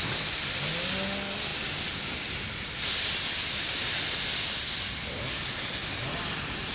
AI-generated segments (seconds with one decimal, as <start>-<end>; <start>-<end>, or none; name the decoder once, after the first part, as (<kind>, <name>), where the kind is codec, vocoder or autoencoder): none